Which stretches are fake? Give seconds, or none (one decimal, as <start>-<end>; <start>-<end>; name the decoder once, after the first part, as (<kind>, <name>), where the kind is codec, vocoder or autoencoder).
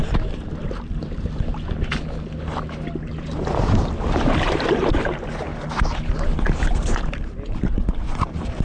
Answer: 0.0-1.5 (vocoder, BigVGAN v2); 3.4-5.5; 6.8-8.6